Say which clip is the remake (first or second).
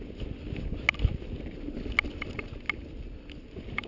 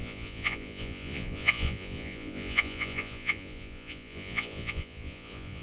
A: second